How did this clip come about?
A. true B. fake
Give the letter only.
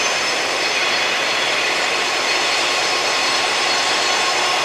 B